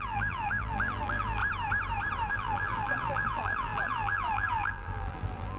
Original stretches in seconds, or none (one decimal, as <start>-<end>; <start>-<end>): 1.4-2.3